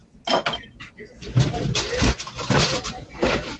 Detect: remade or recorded recorded